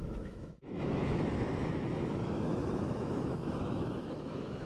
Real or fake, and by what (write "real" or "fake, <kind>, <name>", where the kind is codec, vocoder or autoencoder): fake, autoencoder, DAC-VAE